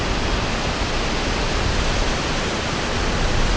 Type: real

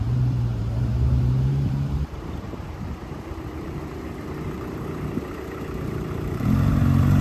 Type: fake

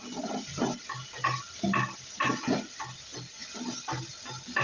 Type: real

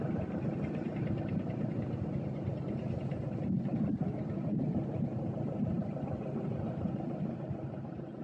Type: fake